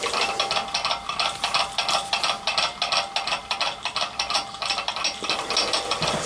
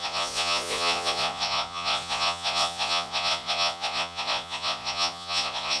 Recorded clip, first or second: first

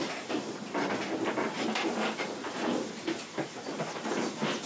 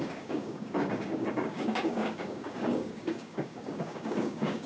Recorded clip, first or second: first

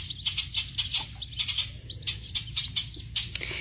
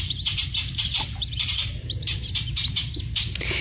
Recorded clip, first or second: first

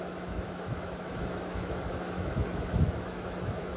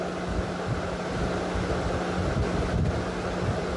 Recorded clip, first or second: second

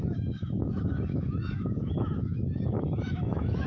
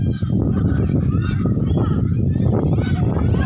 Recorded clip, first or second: second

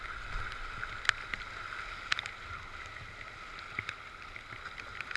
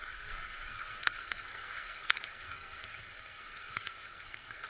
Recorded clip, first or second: first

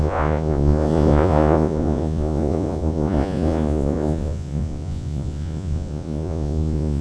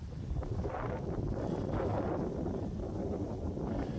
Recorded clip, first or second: second